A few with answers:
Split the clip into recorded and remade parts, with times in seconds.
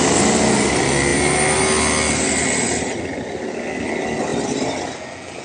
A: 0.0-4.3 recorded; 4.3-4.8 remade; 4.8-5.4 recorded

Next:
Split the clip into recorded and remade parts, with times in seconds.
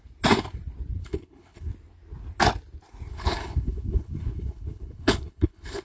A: 0.0-1.0 recorded; 1.0-1.7 remade; 1.7-3.1 recorded; 3.1-5.8 remade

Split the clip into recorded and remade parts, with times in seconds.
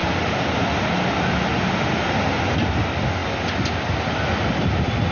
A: 0.0-5.1 recorded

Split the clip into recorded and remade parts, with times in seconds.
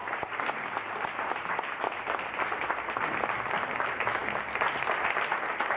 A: 0.0-3.5 remade; 3.5-4.2 recorded; 4.2-5.3 remade; 5.3-5.8 recorded